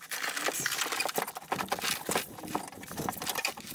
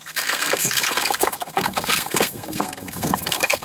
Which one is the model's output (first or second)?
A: second